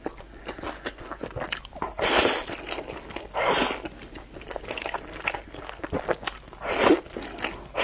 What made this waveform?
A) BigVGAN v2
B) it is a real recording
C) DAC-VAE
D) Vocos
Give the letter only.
B